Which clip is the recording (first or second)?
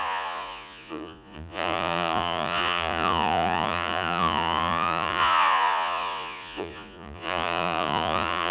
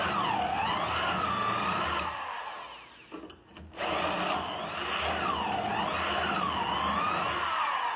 second